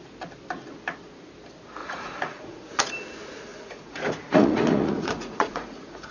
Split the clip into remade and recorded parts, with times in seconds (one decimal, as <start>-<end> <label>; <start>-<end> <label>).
0.0-1.8 recorded; 1.8-2.9 remade; 2.9-3.5 recorded; 3.5-6.1 remade

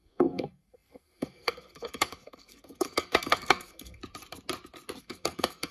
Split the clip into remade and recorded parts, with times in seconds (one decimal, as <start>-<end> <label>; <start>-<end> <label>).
0.0-4.0 remade; 4.0-5.0 recorded; 5.0-5.7 remade